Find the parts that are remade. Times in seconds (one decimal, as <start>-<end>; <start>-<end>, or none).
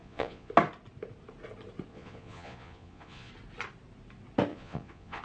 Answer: 0.0-0.5; 1.9-3.3; 4.5-5.2